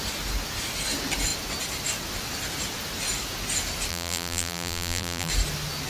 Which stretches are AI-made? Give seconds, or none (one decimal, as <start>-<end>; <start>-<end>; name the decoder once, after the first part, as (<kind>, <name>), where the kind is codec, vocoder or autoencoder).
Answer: 3.9-5.3 (vocoder, BigVGAN v2)